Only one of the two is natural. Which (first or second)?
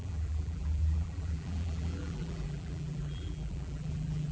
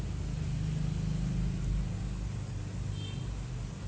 second